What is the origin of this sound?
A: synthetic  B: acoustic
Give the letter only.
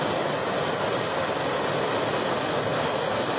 B